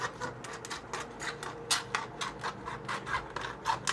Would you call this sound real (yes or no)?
yes